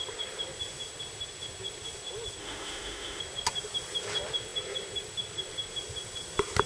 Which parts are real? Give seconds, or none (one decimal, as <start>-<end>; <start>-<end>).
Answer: 0.0-2.4; 3.2-6.7